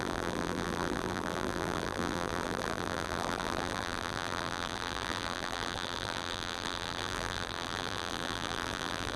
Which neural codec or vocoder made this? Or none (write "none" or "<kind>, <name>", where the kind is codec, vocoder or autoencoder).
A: vocoder, BigVGAN v2